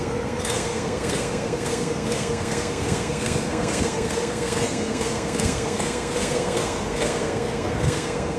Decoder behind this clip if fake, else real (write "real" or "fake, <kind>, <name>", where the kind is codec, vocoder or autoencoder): fake, codec, SNAC